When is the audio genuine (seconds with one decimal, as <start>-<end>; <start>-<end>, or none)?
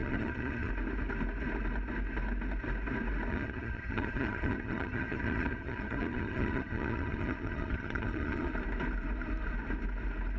0.7-3.3; 8.5-10.4